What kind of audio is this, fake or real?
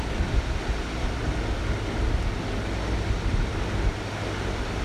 real